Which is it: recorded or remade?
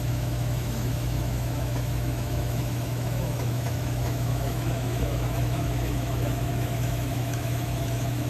remade